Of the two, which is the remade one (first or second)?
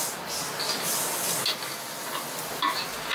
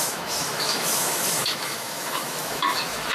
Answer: second